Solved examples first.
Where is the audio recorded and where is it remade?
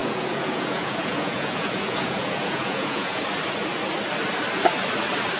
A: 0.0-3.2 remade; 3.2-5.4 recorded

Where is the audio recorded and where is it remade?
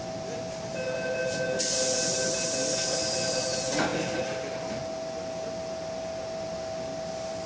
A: 0.0-7.5 recorded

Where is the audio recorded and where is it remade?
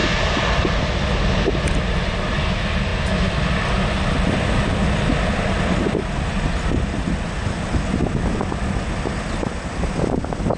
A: 0.0-10.6 recorded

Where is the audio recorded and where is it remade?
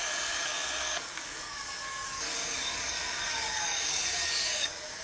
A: 0.0-5.0 remade